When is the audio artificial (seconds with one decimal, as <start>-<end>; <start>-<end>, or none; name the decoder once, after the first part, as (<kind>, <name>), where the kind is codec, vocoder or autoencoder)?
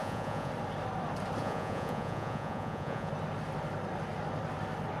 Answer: 0.0-0.5 (vocoder, Vocos); 1.4-3.1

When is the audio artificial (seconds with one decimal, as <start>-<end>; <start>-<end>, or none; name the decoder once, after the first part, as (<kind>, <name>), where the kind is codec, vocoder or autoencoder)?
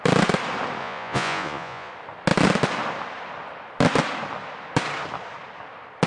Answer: 0.8-1.9 (vocoder, Vocos)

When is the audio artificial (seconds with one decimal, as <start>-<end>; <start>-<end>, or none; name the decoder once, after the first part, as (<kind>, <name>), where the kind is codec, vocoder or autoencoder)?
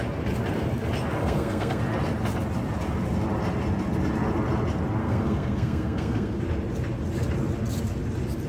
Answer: 1.2-1.8 (codec, SNAC); 5.0-6.4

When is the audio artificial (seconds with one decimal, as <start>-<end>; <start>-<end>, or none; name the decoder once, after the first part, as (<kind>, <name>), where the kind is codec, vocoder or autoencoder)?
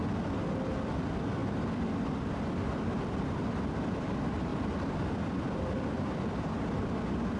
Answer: 1.4-3.3 (vocoder, BigVGAN v2); 4.5-7.4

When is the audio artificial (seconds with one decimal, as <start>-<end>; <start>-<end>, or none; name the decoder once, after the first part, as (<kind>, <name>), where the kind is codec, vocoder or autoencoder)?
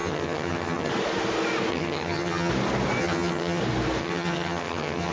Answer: 0.0-0.9 (vocoder, HiFi-GAN); 1.7-2.5; 3.0-3.6; 4.0-5.1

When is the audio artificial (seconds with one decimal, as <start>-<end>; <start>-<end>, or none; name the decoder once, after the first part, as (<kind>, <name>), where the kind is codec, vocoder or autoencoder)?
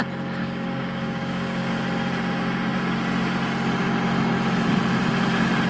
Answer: 0.4-1.7 (codec, DAC)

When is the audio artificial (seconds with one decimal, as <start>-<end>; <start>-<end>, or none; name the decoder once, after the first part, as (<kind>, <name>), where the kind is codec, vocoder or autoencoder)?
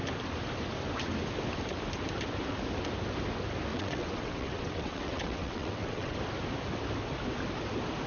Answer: 3.7-6.2 (vocoder, WaveNeXt)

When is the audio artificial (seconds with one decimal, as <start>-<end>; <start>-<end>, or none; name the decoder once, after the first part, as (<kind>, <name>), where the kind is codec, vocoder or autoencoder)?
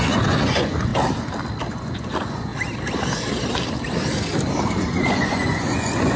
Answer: 0.0-0.9 (vocoder, Vocos); 1.7-2.5; 4.8-6.2